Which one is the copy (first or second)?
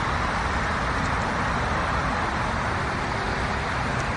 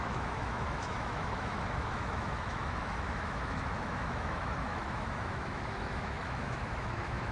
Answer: second